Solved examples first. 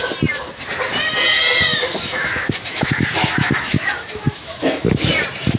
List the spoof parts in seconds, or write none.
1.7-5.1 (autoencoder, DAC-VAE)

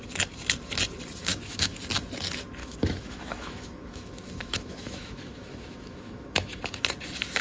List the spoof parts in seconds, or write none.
1.3-1.8 (autoencoder, DAC-VAE); 2.6-6.6

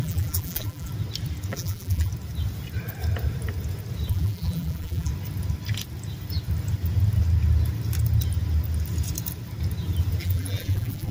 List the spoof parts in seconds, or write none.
0.0-0.9 (vocoder, BigVGAN v2); 1.5-2.1; 4.1-5.1; 10.2-11.1